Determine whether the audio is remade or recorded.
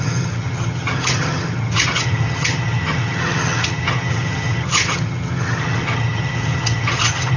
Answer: remade